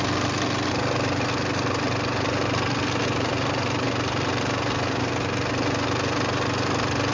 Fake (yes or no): no